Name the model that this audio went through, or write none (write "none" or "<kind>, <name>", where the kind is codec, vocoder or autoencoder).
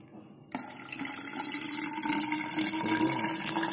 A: none